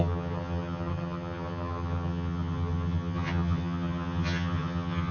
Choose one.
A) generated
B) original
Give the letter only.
A